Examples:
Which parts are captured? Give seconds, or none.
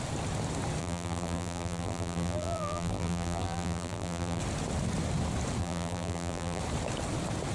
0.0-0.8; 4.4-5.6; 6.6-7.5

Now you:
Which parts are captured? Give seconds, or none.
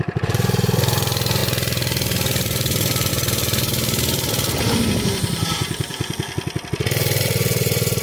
5.9-7.2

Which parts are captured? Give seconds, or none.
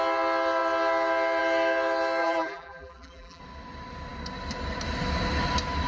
0.0-2.2; 3.4-5.9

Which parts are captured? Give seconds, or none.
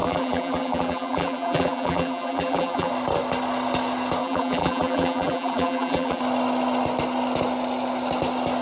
2.9-4.2; 6.2-8.6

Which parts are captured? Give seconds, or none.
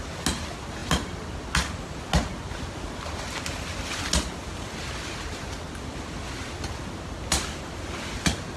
0.0-8.6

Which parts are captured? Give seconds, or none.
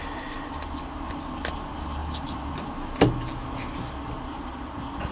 0.0-2.0; 2.5-5.1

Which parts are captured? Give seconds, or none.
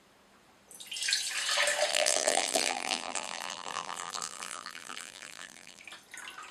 0.0-1.9; 5.8-6.5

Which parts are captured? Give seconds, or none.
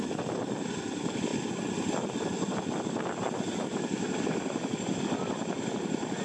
0.0-6.2